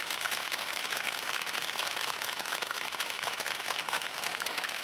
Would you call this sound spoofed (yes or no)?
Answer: yes